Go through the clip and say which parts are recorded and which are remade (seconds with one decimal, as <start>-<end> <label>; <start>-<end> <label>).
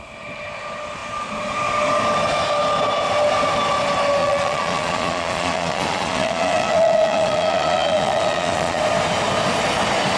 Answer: 0.0-4.2 recorded; 4.2-8.8 remade; 8.8-10.2 recorded